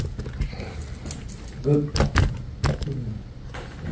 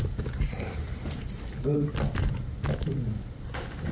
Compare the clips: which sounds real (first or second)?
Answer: first